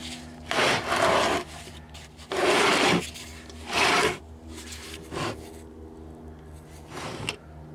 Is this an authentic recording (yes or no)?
yes